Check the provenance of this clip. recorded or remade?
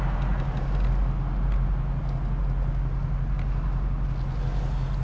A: recorded